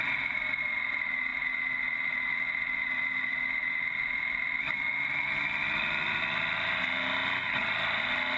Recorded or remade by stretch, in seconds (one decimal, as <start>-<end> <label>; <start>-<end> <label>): 0.0-8.4 recorded